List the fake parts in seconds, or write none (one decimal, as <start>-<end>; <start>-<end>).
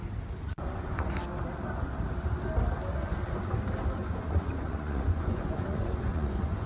0.5-1.1; 4.0-6.7